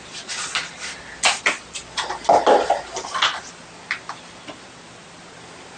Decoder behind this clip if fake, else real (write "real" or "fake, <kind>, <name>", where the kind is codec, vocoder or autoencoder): real